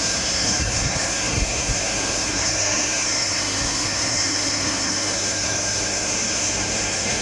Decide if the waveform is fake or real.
fake